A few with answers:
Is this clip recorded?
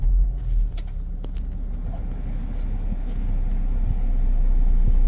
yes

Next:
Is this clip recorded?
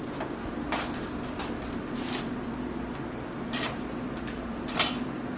yes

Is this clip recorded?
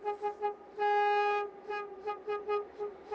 yes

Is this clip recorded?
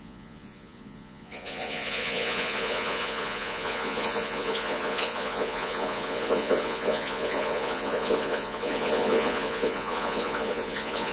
no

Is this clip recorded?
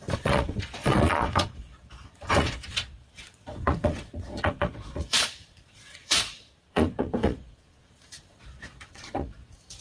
no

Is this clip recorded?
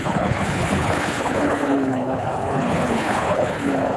no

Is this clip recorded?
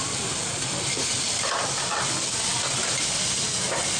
yes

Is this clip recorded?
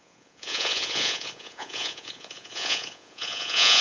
no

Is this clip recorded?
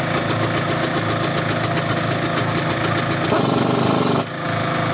yes